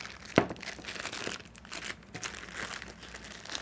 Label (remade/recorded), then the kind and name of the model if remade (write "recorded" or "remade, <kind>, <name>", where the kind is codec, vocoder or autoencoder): recorded